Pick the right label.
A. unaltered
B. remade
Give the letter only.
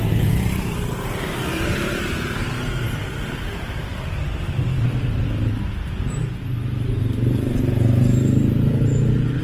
B